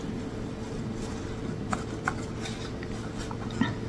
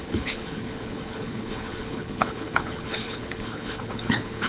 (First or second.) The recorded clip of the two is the first